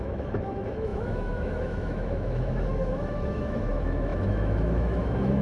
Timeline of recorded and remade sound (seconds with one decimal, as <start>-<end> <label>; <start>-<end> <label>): 0.0-5.4 remade